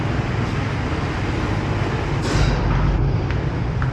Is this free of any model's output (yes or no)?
yes